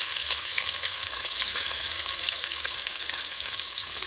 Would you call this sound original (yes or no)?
no